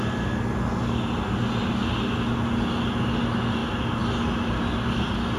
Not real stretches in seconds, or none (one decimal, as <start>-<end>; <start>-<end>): none